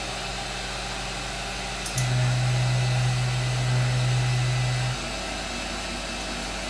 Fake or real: real